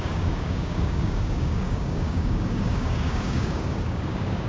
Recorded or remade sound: remade